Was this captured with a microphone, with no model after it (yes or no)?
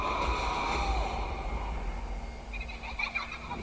yes